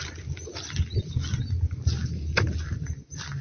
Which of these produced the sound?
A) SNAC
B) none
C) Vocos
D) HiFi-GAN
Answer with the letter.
B